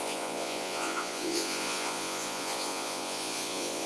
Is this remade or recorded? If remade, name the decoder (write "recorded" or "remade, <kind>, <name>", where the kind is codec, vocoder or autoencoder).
remade, vocoder, Vocos